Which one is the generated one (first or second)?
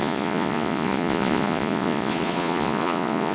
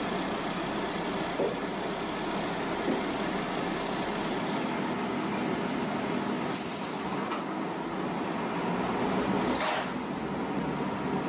first